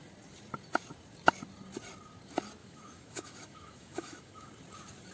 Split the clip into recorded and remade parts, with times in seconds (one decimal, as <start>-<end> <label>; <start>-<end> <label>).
0.0-2.6 recorded; 2.6-4.5 remade; 4.5-5.1 recorded